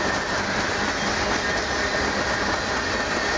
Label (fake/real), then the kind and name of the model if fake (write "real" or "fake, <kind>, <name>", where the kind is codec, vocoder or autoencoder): real